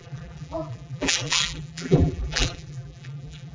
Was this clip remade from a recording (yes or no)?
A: yes